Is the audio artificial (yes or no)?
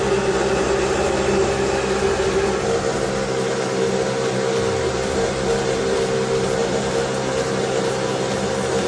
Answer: no